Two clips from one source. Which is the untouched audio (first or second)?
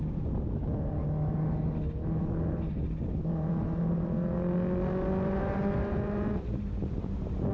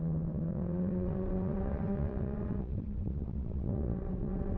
first